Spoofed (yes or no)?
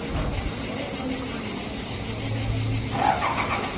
no